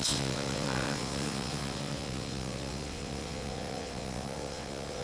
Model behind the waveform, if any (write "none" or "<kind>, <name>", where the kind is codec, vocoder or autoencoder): vocoder, WaveNeXt